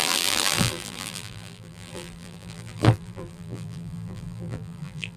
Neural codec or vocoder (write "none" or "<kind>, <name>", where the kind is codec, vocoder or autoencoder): vocoder, BigVGAN v2